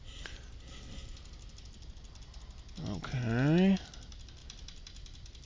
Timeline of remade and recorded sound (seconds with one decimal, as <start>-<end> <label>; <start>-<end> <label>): 0.0-1.0 recorded; 1.0-1.9 remade; 1.9-4.4 recorded; 4.4-5.5 remade